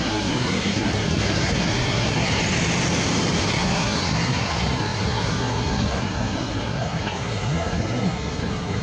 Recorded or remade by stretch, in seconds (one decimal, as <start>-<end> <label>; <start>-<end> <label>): 0.0-2.4 remade; 2.4-3.5 recorded; 3.5-8.8 remade